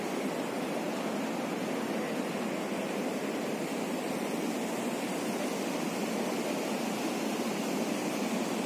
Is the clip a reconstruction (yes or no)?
no